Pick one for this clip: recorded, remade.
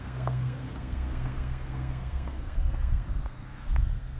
remade